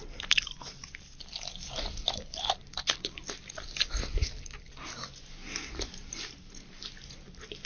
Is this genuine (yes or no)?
yes